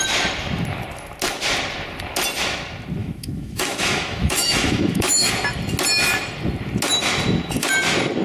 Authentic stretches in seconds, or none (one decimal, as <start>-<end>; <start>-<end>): 0.0-3.0; 5.3-8.2